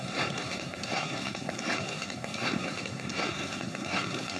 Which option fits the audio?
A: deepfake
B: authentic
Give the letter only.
A